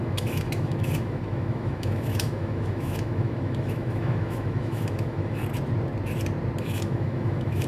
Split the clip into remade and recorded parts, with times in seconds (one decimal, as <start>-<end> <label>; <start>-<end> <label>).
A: 0.0-5.4 remade; 5.4-6.6 recorded; 6.6-7.7 remade